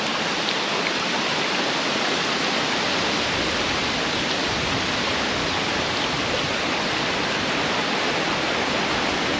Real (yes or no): yes